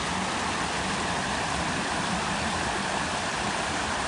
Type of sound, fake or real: fake